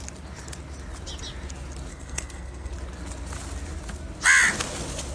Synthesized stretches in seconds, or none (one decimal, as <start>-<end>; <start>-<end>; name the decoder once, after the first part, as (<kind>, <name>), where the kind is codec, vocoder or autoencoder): 1.9-2.7 (codec, SNAC)